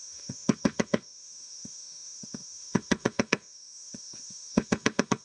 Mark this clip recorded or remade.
remade